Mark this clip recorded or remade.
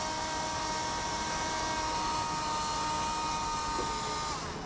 recorded